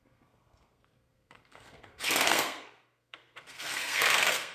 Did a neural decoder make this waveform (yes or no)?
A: yes